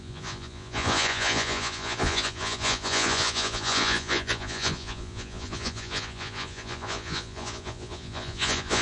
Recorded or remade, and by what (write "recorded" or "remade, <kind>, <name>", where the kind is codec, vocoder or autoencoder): remade, vocoder, Vocos